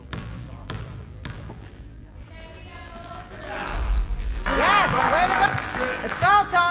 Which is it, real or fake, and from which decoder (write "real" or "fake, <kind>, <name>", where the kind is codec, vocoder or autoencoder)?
fake, vocoder, BigVGAN v2